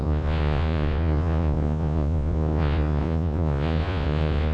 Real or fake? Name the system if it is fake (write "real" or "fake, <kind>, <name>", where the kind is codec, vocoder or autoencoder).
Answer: fake, vocoder, Vocos